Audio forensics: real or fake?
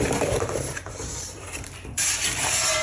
fake